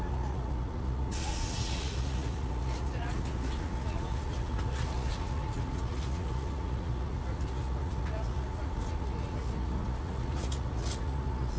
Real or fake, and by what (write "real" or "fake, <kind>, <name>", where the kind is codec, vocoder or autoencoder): fake, vocoder, Vocos